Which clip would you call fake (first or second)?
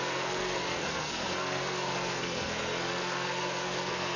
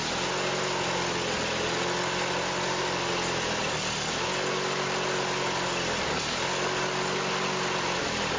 first